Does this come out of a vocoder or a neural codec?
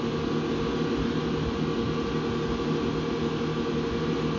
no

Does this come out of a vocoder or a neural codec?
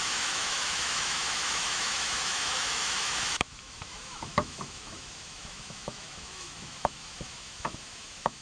yes